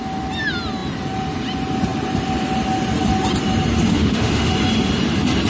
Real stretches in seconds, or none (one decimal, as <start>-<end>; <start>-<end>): 0.0-3.9; 4.5-5.5